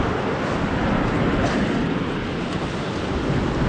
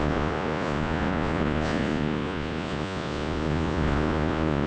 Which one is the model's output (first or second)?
second